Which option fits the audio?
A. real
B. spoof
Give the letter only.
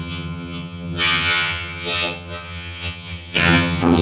B